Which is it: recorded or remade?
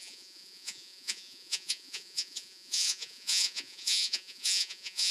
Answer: remade